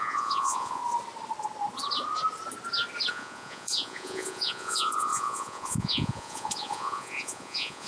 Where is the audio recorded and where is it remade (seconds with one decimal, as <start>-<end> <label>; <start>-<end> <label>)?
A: 0.0-0.8 remade; 0.8-3.1 recorded; 3.1-7.9 remade